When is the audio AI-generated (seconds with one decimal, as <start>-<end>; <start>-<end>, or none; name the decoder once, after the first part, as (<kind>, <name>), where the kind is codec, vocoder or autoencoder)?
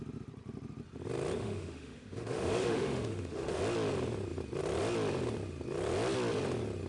1.4-3.6 (autoencoder, DAC-VAE)